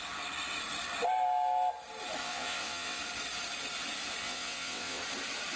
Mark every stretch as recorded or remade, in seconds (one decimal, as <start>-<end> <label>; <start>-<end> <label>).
0.0-2.2 recorded; 2.2-3.0 remade; 3.0-4.2 recorded; 4.2-5.0 remade; 5.0-5.6 recorded